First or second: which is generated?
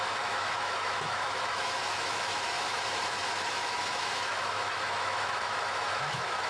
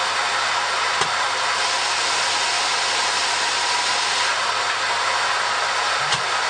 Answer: first